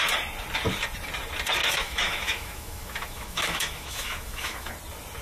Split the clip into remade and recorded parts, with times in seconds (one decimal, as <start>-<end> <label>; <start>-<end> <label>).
0.0-1.6 recorded; 1.6-4.7 remade; 4.7-5.2 recorded